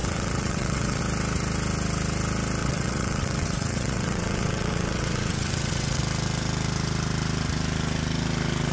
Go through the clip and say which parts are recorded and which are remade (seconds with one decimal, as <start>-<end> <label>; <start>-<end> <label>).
0.0-1.0 remade; 1.0-2.6 recorded; 2.6-6.0 remade; 6.0-8.7 recorded